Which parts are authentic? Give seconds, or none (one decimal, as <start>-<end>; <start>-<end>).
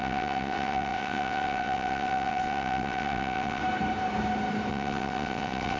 3.6-4.7